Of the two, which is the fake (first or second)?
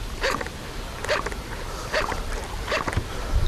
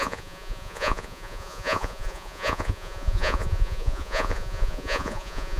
second